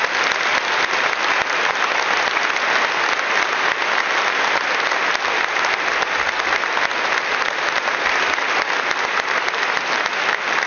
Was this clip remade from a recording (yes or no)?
no